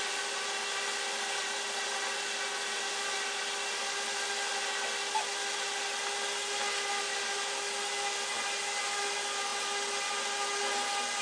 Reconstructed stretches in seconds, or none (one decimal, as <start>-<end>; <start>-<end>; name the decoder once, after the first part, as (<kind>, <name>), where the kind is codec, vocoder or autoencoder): none